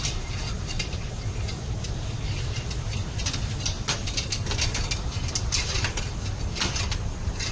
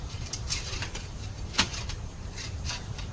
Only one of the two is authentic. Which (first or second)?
first